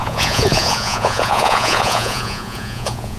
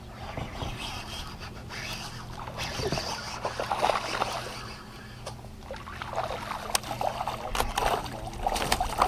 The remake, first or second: first